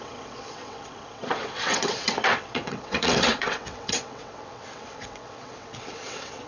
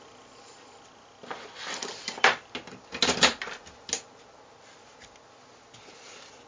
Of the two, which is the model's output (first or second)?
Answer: first